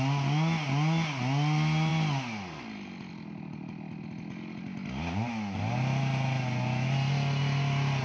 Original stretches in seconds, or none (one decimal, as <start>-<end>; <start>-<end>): 0.0-8.0